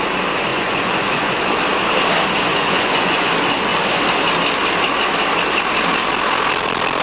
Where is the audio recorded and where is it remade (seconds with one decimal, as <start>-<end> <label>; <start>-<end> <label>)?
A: 0.0-0.5 recorded; 0.5-1.3 remade; 1.3-2.5 recorded; 2.5-3.3 remade; 3.3-7.0 recorded